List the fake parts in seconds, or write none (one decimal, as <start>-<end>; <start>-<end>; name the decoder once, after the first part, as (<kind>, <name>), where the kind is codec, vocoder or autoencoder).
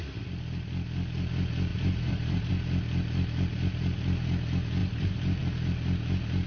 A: 1.7-2.5 (vocoder, BigVGAN v2); 4.8-5.4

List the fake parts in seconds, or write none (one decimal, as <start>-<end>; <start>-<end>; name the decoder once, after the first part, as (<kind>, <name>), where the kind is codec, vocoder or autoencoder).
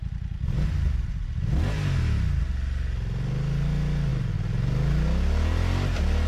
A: none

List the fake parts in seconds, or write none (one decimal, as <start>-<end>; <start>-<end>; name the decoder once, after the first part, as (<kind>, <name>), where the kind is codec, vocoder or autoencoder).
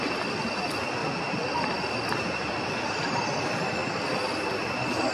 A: 1.0-1.9 (vocoder, BigVGAN v2)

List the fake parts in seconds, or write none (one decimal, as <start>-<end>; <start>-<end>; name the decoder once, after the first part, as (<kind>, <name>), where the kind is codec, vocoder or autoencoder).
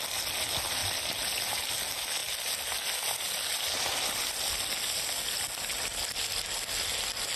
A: none